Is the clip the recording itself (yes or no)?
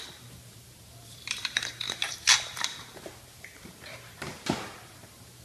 no